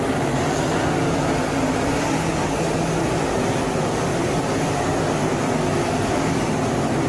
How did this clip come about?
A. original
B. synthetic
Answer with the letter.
A